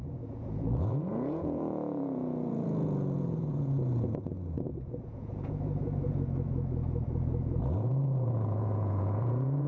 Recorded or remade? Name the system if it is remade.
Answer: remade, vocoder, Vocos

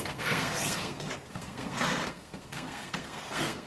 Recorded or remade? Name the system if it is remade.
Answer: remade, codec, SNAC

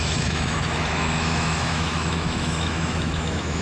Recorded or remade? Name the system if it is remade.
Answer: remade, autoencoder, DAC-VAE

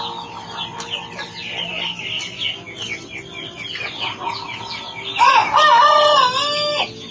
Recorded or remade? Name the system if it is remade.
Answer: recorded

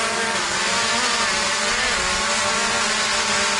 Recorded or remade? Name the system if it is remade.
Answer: recorded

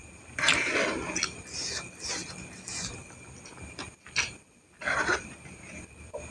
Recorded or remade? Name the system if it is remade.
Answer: recorded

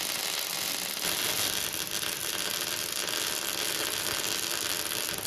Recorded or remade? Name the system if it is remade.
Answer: recorded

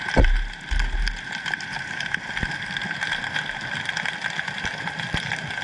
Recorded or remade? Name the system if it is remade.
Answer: recorded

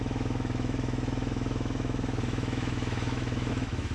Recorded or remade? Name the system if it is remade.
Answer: remade, autoencoder, DAC-VAE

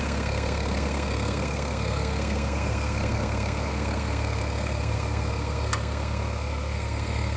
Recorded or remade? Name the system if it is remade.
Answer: remade, codec, SNAC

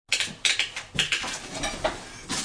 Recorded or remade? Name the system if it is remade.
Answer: recorded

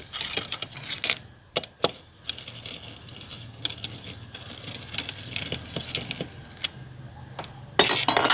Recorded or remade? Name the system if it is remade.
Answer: recorded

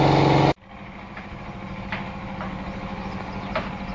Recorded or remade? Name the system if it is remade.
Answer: recorded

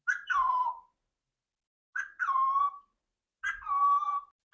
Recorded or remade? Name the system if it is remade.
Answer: recorded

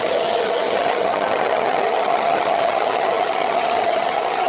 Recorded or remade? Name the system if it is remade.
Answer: remade, vocoder, HiFi-GAN